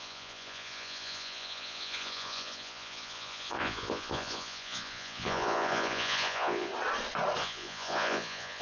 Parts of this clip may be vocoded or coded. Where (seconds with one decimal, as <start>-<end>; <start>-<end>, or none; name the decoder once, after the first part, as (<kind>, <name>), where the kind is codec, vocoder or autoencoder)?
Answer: 0.0-6.7 (vocoder, Vocos); 7.4-8.6